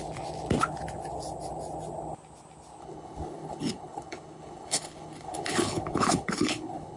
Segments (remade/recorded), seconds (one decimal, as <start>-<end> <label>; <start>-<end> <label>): 0.0-2.8 recorded; 2.8-7.0 remade